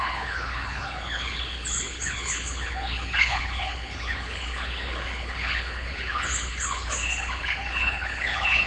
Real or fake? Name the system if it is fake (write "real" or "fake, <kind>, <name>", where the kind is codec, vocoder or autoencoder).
fake, codec, HILCodec